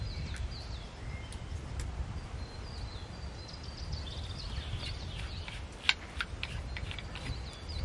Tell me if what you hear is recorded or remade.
recorded